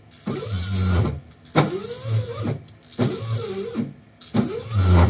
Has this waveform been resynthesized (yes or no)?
no